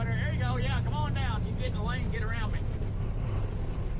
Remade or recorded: recorded